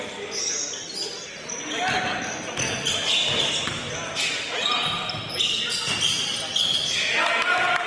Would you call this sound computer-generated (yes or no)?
no